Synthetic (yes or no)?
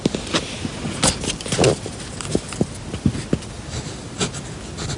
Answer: no